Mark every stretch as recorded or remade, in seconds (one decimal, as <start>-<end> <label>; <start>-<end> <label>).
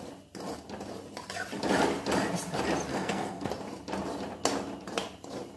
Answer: 0.0-2.9 recorded; 2.9-3.5 remade; 3.5-5.6 recorded